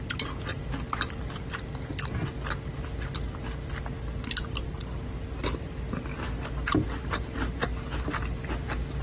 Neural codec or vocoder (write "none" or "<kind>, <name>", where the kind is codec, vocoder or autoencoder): none